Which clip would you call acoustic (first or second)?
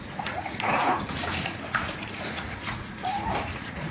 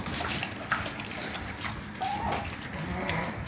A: second